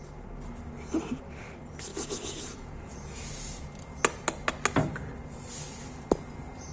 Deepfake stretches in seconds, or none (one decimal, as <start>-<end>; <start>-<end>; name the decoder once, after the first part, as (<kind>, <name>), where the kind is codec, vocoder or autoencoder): 1.9-3.6 (vocoder, Vocos)